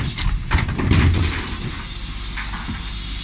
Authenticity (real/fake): real